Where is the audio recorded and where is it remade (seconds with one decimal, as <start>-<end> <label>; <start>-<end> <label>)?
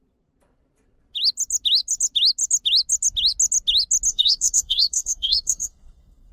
0.0-4.1 recorded; 4.1-6.3 remade